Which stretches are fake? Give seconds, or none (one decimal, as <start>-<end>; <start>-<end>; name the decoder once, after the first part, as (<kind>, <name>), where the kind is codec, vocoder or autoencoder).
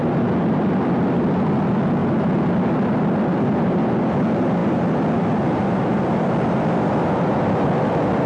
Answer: 0.0-0.9 (vocoder, BigVGAN v2); 4.6-6.2